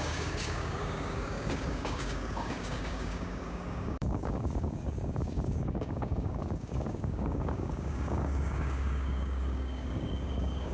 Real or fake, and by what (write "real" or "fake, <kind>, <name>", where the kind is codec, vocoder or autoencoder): fake, codec, DAC